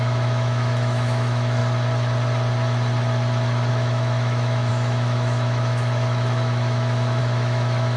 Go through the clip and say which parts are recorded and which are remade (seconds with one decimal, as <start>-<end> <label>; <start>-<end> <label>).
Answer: 0.0-1.6 remade; 1.6-3.7 recorded; 3.7-8.0 remade